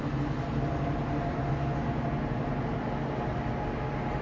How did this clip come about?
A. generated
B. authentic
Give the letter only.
B